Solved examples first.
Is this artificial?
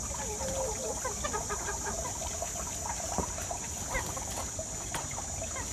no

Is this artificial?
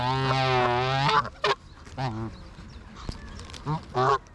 no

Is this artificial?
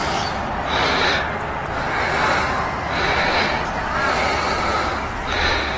no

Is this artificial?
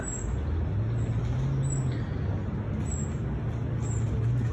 no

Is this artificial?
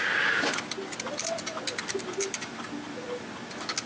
no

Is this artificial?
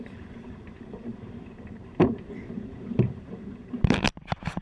yes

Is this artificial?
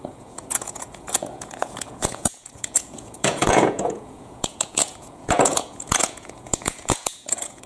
yes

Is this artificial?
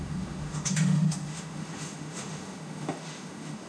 yes